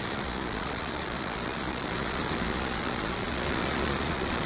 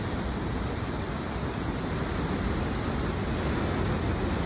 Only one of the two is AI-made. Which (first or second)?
first